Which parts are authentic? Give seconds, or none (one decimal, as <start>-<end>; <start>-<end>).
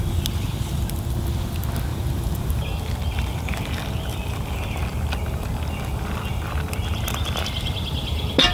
0.0-1.9; 2.7-8.5